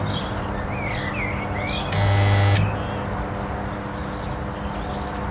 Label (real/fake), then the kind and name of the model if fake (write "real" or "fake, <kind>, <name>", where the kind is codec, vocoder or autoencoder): real